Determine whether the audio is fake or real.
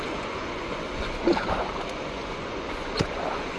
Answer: fake